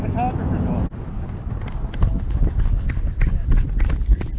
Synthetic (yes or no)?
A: no